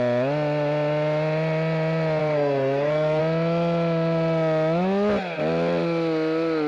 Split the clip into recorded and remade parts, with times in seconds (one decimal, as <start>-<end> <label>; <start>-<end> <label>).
0.0-2.2 recorded; 2.2-3.2 remade; 3.2-6.7 recorded